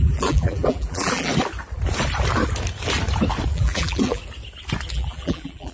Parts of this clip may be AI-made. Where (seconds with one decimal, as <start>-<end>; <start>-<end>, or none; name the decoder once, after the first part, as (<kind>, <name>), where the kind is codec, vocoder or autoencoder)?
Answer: 0.0-1.3 (vocoder, BigVGAN v2); 3.5-4.2; 4.9-5.7

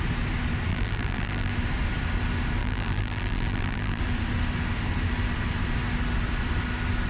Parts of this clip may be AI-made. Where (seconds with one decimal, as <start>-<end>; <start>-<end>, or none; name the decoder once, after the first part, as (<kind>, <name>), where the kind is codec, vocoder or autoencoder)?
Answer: 0.7-1.5 (vocoder, BigVGAN v2); 2.6-4.0

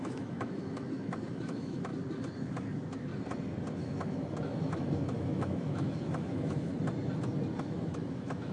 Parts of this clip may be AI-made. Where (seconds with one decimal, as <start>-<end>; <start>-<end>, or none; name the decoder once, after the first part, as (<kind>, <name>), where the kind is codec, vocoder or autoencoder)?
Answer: 0.0-1.9 (autoencoder, DAC-VAE); 2.4-3.1; 3.7-6.7; 7.6-8.5

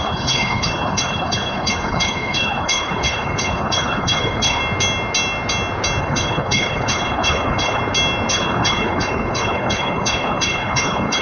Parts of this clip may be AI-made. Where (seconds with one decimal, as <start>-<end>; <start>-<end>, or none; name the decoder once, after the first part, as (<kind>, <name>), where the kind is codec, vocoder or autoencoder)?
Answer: 0.0-4.6 (codec, HILCodec); 6.0-7.8; 8.3-11.2